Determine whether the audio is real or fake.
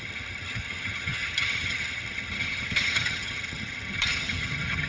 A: fake